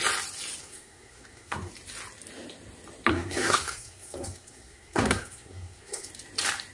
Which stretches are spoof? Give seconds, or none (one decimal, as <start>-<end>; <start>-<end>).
0.6-1.7; 3.1-6.1